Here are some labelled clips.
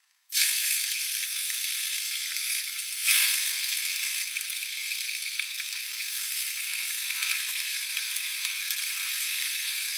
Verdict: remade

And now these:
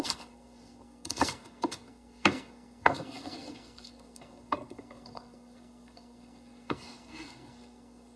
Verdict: remade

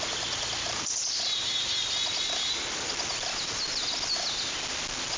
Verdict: recorded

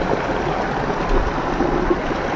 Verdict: recorded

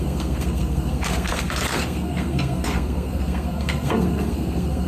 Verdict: remade